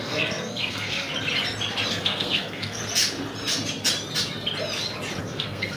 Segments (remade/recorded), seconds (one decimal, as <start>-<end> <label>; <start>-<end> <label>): 0.0-1.1 remade; 1.1-1.9 recorded; 1.9-2.8 remade; 2.8-5.2 recorded; 5.2-5.8 remade

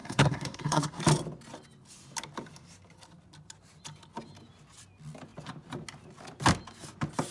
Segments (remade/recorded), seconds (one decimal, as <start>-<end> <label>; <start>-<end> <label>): 0.0-1.0 remade; 1.0-7.3 recorded

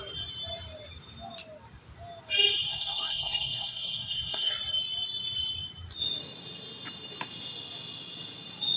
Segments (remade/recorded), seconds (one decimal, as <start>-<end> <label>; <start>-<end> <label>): 0.0-2.7 recorded; 2.7-4.5 remade; 4.5-8.8 recorded